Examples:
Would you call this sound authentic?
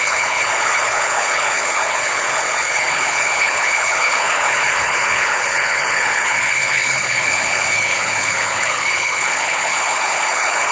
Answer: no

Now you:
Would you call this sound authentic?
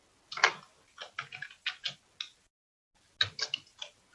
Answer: yes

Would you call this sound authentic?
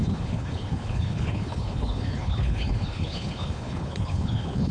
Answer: no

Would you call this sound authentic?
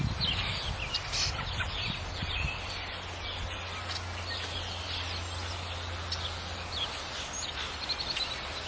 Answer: yes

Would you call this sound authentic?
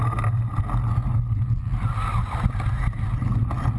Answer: yes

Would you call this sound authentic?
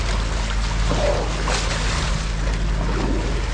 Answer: yes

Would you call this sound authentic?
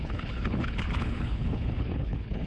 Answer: no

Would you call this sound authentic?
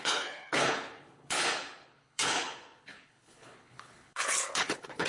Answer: no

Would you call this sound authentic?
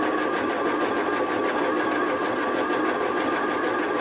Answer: yes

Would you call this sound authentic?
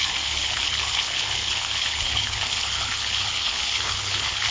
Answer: no